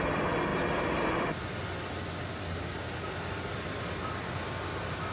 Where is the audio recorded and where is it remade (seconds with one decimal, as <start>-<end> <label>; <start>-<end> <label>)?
0.0-5.1 recorded